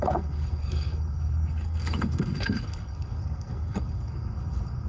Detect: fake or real fake